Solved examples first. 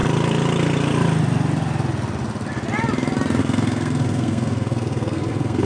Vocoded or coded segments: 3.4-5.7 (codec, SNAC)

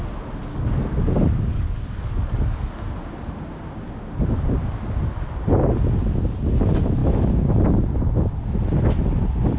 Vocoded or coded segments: 0.5-2.7 (codec, DAC)

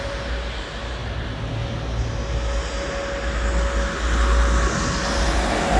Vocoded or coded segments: none

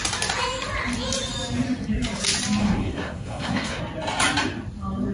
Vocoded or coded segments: 2.6-3.8 (codec, SNAC)

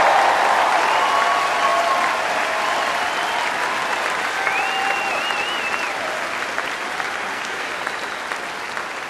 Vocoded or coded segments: 7.3-7.8 (codec, SNAC)

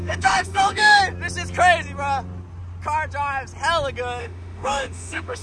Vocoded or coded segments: 0.0-1.0 (autoencoder, DAC-VAE); 4.2-5.4

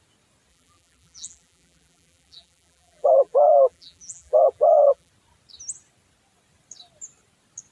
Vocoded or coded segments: 0.5-5.1 (vocoder, BigVGAN v2)

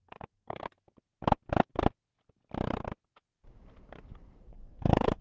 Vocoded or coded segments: 0.0-0.6 (codec, SNAC); 4.5-5.2